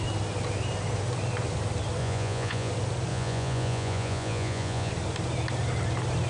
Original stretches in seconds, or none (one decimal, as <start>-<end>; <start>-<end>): 0.0-2.0; 2.7-3.1; 4.9-6.3